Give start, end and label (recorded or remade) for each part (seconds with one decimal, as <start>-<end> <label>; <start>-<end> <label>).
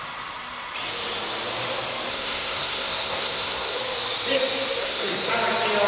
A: 0.0-2.1 recorded; 2.1-3.8 remade; 3.8-4.8 recorded; 4.8-5.3 remade; 5.3-5.9 recorded